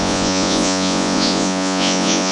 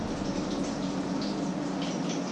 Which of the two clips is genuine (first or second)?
second